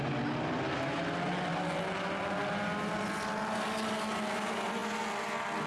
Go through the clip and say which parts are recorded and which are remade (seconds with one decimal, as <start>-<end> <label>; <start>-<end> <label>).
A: 0.0-5.7 recorded